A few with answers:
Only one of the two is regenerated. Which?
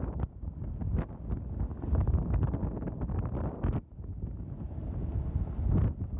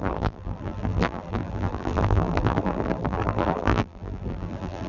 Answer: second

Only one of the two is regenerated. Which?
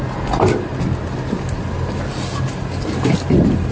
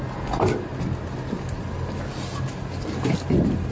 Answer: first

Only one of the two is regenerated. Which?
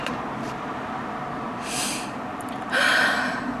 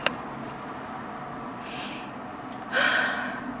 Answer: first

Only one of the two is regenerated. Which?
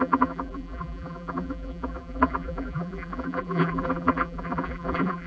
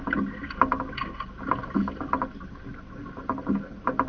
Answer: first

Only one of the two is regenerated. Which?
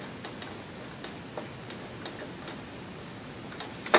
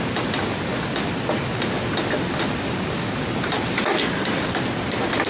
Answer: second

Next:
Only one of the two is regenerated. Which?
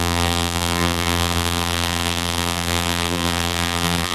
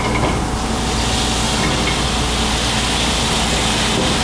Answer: first